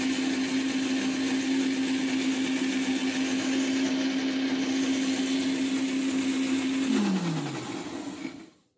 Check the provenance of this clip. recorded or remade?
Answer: recorded